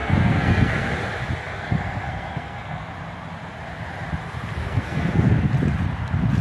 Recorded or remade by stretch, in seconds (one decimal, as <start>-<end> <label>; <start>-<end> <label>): 0.0-0.9 remade; 0.9-1.4 recorded; 1.4-2.9 remade; 2.9-4.6 recorded; 4.6-5.5 remade; 5.5-6.4 recorded